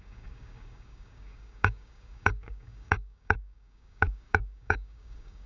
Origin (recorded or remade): remade